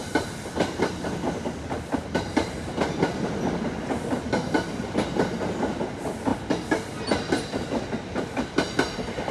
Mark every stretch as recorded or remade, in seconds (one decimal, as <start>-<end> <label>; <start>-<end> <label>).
0.0-9.3 recorded